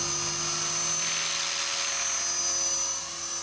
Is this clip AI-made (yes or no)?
no